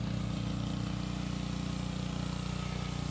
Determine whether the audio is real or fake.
real